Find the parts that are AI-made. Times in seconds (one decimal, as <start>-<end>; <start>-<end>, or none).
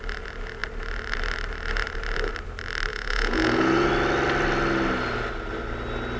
2.9-3.9